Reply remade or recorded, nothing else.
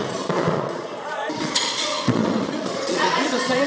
remade